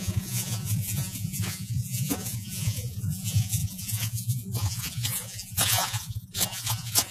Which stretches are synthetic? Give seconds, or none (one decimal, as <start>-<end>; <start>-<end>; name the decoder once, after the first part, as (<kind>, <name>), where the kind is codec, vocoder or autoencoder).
0.0-7.1 (vocoder, Vocos)